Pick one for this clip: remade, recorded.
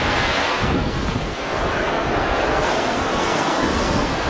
remade